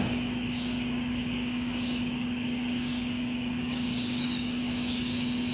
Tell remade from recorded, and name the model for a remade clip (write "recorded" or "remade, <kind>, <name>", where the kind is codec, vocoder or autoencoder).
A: remade, codec, DAC